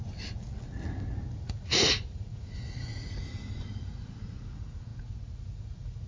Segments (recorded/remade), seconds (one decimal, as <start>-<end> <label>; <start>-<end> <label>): 0.0-1.4 recorded; 1.4-3.2 remade; 3.2-3.8 recorded; 3.8-6.1 remade